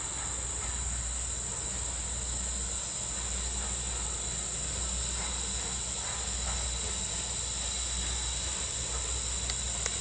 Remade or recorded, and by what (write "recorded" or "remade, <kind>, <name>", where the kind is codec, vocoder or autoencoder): recorded